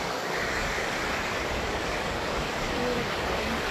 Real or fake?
fake